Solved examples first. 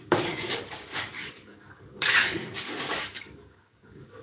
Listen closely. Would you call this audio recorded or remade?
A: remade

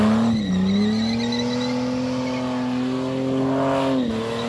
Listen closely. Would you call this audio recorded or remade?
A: recorded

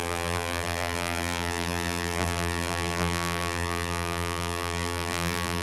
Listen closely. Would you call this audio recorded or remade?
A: remade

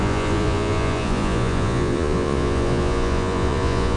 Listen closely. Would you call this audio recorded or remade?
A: remade